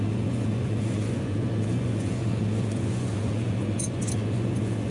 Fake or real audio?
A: fake